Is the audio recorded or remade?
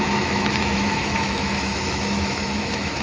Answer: remade